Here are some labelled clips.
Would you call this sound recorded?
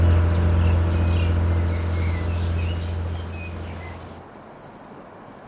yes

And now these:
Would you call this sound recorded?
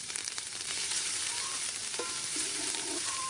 no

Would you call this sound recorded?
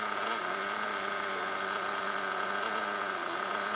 yes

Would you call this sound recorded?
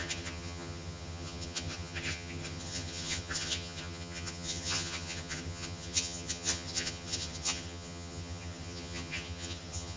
no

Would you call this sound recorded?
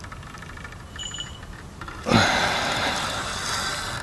yes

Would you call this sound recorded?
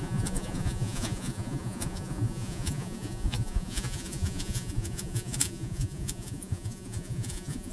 no